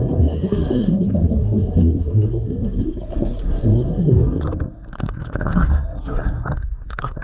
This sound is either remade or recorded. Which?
remade